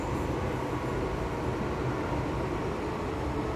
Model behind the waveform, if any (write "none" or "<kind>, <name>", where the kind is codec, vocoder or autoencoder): none